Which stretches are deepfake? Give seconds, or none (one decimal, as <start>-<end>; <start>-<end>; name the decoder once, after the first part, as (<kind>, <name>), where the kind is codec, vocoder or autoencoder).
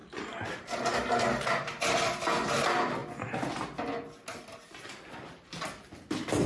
none